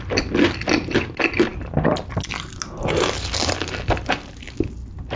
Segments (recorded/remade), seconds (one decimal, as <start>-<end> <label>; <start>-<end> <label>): 0.0-5.2 recorded